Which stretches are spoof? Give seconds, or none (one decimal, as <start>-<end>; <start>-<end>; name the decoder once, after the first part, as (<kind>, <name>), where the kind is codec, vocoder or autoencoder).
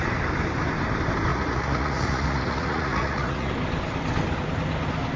1.3-3.5 (vocoder, Vocos)